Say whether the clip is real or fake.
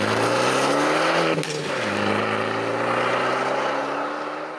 real